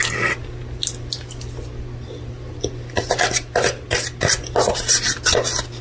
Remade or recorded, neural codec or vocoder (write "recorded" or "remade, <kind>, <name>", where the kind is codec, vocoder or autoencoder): recorded